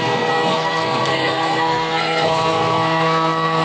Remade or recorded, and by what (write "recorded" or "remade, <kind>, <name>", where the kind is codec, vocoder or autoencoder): remade, codec, SNAC